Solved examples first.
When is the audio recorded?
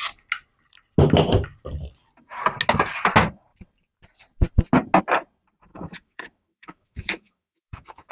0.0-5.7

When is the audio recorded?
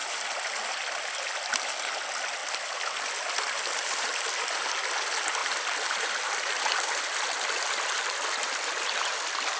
0.0-9.6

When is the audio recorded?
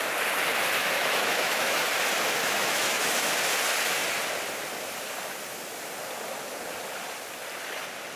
0.0-0.8; 1.8-2.4; 3.3-8.2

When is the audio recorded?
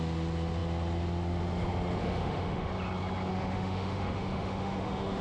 0.0-2.0; 2.7-3.3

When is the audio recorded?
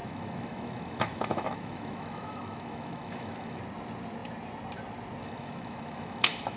3.6-5.2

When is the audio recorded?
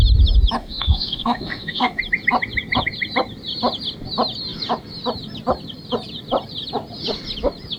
0.0-0.6; 2.0-7.8